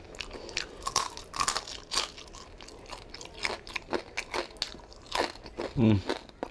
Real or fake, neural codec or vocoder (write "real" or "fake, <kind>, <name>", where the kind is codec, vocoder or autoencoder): real